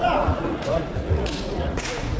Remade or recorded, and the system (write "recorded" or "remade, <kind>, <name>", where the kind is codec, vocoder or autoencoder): remade, vocoder, Vocos